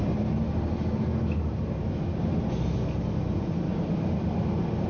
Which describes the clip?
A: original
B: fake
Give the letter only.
A